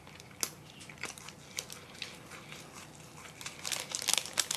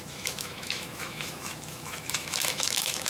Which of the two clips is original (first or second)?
first